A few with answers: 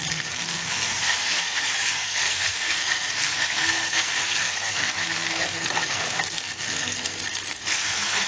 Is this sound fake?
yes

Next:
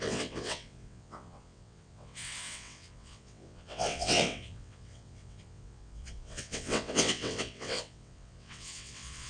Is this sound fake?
yes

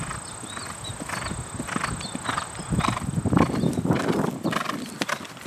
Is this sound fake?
no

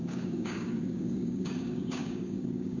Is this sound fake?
yes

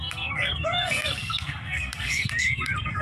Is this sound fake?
yes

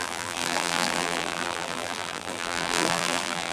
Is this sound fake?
yes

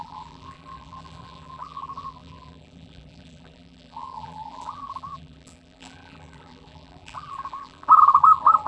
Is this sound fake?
yes